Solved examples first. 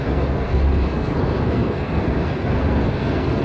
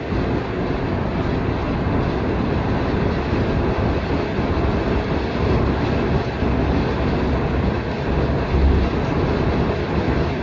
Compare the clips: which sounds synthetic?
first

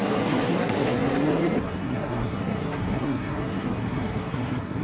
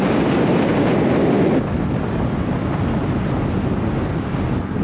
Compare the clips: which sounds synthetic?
first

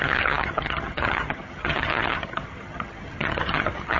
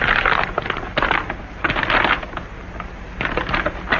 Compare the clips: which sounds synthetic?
first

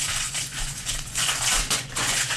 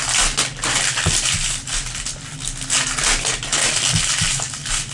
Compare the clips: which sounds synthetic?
first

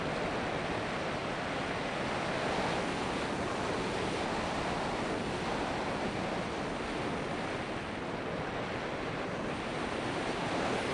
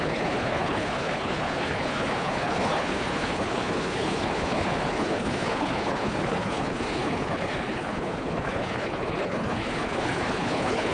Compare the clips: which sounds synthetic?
second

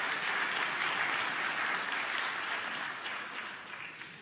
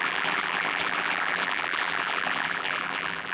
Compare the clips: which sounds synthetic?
second